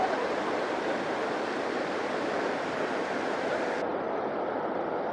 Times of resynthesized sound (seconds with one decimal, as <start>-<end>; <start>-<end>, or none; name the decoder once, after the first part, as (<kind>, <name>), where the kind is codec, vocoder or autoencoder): none